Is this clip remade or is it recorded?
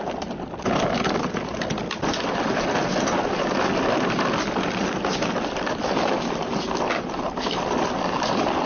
recorded